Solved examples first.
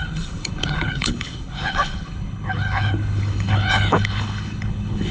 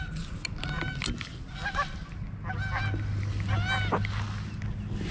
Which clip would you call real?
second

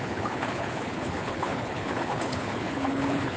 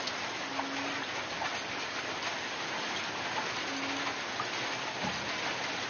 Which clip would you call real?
second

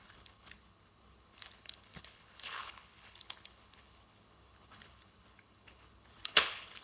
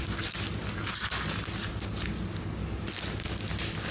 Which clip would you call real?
second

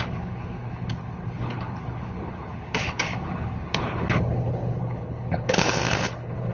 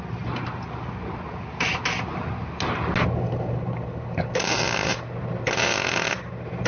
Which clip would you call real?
second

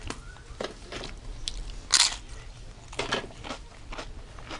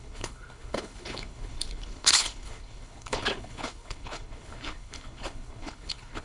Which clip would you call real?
first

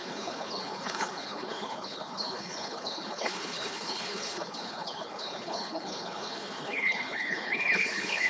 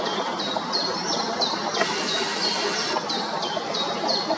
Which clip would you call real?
second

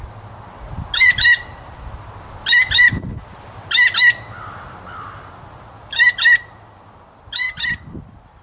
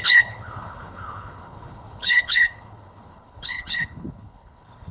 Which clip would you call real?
first